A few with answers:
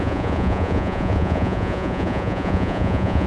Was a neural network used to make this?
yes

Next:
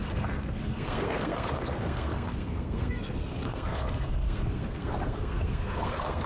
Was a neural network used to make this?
yes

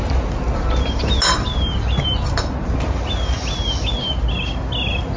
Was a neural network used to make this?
no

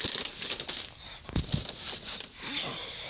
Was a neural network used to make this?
no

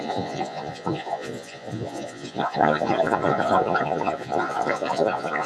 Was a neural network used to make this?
yes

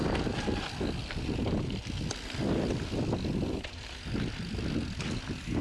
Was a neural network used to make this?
no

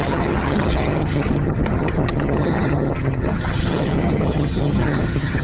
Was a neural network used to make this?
yes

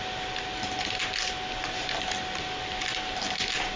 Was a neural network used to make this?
no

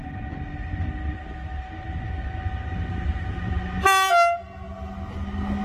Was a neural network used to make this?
no